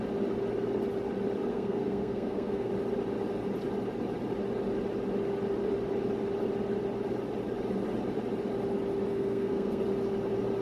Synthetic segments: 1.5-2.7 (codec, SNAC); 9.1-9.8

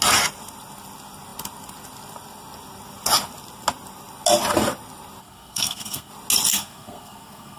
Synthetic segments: 5.2-6.1 (codec, SNAC); 6.5-7.6